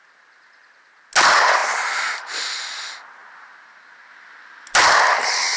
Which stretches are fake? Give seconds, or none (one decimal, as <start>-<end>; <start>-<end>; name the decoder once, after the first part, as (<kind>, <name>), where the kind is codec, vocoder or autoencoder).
none